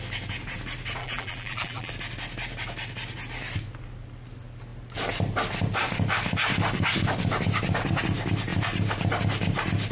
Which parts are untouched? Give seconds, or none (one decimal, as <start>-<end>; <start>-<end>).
0.0-1.0; 1.9-9.9